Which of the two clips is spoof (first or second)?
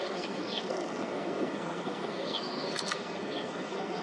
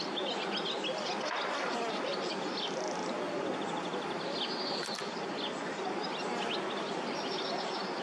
first